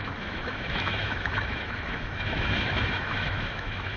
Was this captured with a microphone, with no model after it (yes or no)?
no